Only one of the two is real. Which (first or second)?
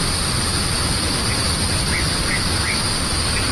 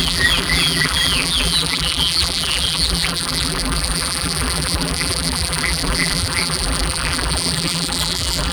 first